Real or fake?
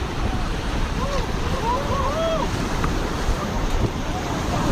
fake